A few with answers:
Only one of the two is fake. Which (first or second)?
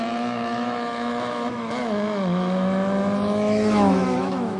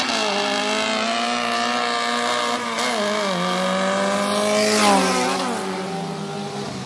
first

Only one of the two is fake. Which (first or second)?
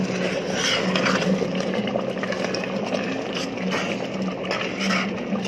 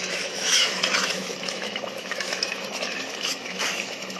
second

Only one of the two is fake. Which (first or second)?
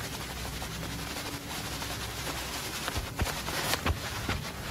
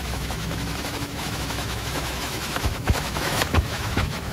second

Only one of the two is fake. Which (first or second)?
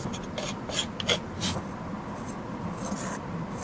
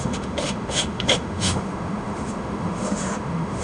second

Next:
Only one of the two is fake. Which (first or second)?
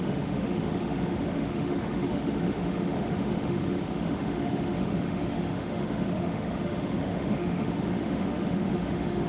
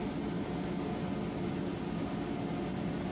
first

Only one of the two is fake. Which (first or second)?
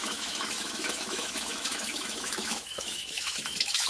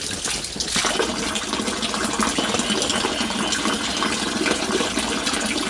first